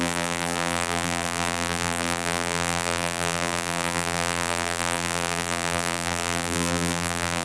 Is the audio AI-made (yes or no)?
yes